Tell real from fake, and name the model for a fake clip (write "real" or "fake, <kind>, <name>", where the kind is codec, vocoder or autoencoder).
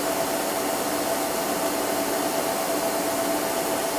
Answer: real